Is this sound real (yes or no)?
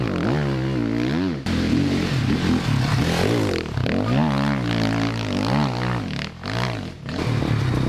yes